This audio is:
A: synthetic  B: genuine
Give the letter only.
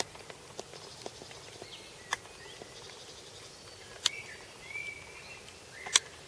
B